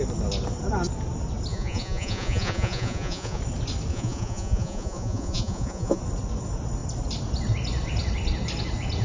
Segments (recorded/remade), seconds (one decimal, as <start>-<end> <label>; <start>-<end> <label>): 0.0-1.5 recorded; 1.5-3.4 remade; 3.4-3.9 recorded; 3.9-6.0 remade; 6.0-9.0 recorded